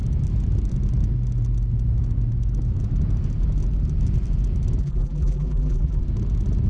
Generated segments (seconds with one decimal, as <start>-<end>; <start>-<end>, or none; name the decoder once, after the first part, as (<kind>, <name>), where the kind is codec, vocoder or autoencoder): 4.8-6.0 (vocoder, BigVGAN v2)